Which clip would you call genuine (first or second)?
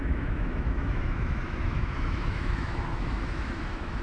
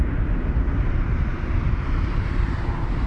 second